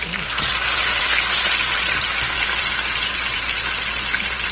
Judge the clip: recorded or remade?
recorded